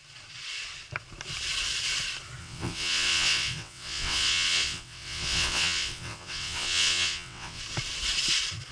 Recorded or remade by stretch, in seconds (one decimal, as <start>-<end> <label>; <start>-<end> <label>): 0.0-2.4 recorded; 2.4-7.6 remade; 7.6-8.7 recorded